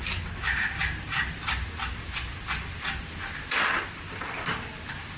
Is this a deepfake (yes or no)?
no